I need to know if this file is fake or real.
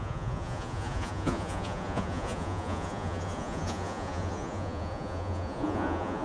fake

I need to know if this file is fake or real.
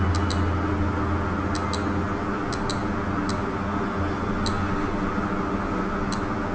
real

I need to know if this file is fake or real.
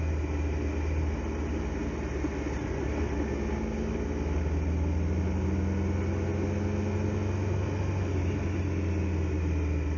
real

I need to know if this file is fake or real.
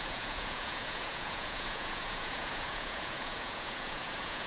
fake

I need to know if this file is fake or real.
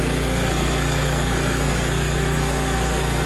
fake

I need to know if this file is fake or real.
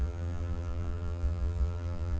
fake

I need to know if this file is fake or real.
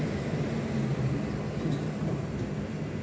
real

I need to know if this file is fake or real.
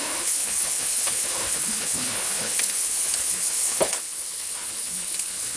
fake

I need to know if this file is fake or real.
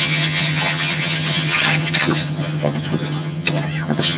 fake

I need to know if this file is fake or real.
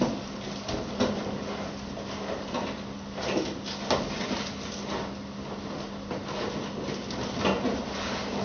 real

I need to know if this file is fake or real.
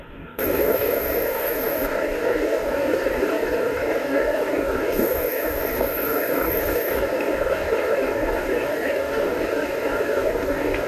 fake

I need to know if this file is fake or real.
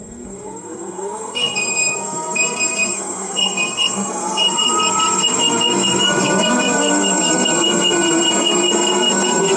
fake